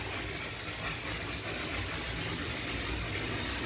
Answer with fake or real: real